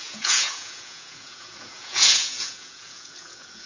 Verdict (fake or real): fake